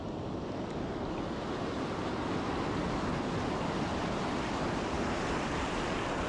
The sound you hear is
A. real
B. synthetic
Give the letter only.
A